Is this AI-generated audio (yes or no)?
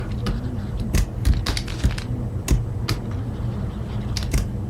no